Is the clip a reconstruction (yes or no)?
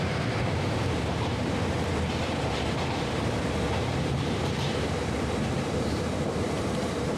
yes